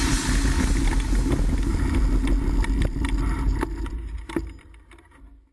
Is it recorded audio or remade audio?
recorded